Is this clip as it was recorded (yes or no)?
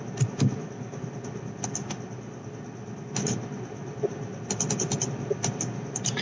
yes